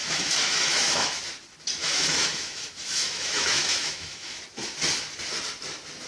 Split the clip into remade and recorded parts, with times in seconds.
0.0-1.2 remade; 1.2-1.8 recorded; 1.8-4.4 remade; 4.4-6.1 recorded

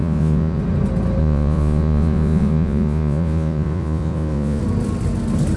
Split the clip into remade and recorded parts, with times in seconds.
0.0-0.6 remade; 0.6-1.2 recorded; 1.2-4.6 remade; 4.6-5.6 recorded